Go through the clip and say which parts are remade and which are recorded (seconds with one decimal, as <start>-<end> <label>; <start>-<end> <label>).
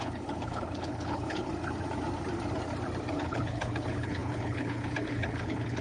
0.0-1.5 remade; 1.5-3.1 recorded; 3.1-5.8 remade